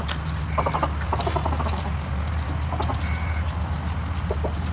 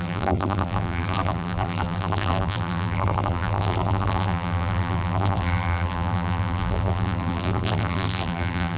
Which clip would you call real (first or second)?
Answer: first